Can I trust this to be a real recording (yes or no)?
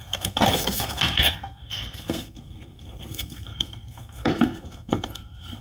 no